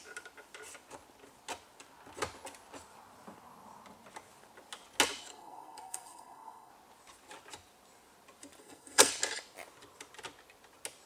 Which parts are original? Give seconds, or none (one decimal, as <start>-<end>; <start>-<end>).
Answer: 0.0-5.3; 6.7-8.6; 9.1-11.1